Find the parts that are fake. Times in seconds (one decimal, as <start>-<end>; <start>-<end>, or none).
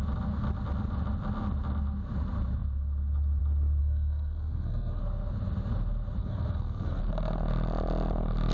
3.8-5.0; 6.2-7.0